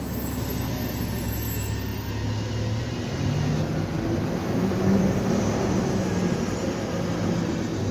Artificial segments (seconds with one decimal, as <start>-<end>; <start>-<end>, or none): 4.4-5.3